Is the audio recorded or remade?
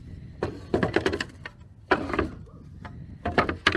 recorded